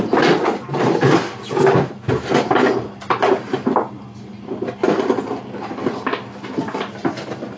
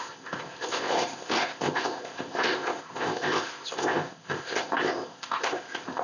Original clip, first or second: first